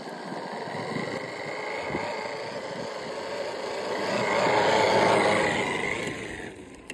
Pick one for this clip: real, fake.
real